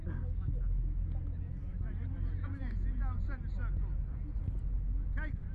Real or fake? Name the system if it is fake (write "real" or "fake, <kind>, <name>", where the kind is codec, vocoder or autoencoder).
real